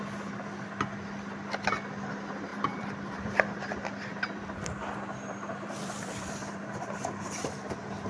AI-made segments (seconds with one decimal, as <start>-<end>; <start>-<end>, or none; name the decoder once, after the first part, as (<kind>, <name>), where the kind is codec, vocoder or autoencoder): 2.5-7.2 (vocoder, BigVGAN v2)